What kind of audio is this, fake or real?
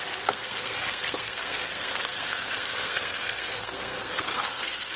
fake